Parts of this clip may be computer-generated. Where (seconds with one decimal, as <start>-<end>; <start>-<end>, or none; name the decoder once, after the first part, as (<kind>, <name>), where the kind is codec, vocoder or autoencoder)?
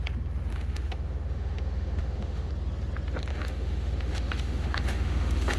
0.5-2.5 (autoencoder, DAC-VAE); 3.3-5.6